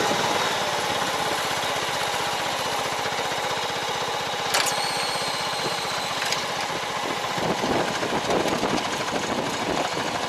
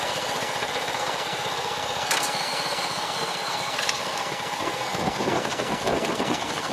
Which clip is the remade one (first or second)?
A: second